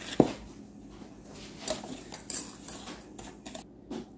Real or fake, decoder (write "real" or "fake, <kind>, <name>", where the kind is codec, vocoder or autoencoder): real